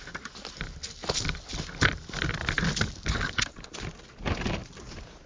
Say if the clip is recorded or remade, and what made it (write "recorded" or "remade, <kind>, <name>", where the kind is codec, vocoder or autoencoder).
recorded